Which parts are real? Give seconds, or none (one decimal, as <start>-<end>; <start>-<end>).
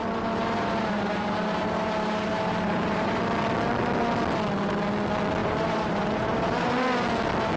3.2-5.4; 6.7-7.6